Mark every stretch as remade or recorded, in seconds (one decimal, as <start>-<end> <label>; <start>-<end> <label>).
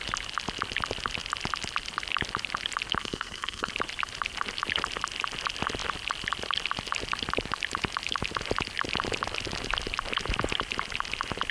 0.0-3.0 recorded; 3.0-3.7 remade; 3.7-11.5 recorded